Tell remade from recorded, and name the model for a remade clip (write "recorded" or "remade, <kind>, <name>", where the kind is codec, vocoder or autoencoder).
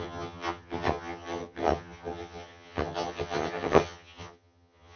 remade, vocoder, HiFi-GAN